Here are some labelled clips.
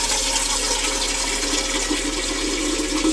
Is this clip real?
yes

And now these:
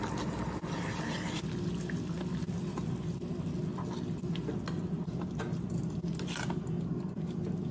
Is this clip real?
yes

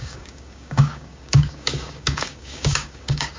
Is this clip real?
no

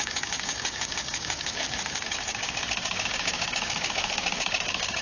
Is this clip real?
no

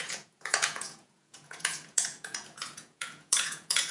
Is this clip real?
no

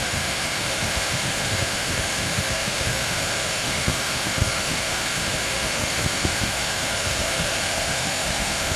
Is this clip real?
no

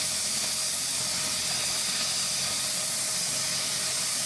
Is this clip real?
yes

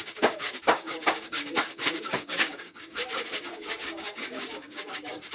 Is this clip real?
no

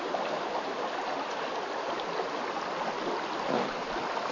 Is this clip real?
yes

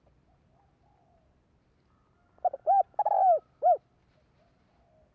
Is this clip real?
yes